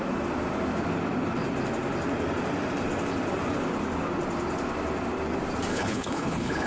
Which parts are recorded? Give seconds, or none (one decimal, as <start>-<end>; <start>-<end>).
0.0-5.7